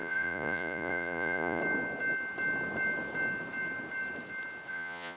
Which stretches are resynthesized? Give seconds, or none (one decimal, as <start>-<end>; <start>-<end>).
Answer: 0.0-1.6; 4.7-5.2